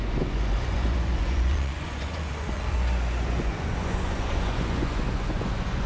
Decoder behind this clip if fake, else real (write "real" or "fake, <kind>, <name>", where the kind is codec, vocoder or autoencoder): fake, vocoder, Vocos